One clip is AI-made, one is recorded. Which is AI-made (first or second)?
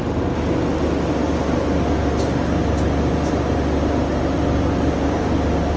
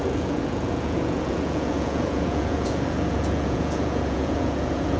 second